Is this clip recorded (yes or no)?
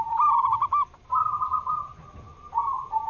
yes